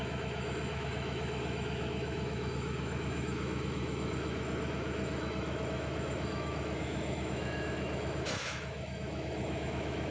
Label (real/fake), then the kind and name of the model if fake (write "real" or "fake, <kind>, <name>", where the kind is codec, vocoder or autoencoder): fake, autoencoder, DAC-VAE